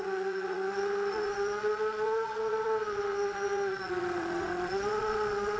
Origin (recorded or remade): remade